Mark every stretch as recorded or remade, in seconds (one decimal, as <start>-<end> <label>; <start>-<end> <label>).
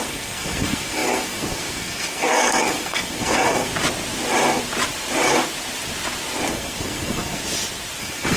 0.0-3.7 remade; 3.7-6.5 recorded; 6.5-7.4 remade; 7.4-8.0 recorded; 8.0-8.4 remade